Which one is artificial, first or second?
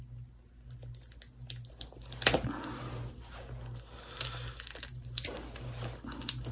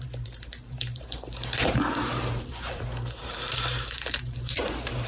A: second